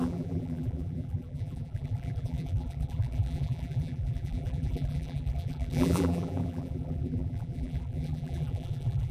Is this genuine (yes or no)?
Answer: no